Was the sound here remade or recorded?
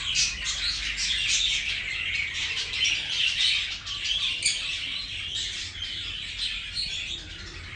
recorded